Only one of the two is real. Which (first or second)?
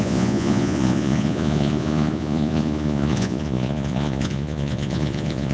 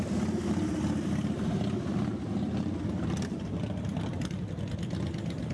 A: second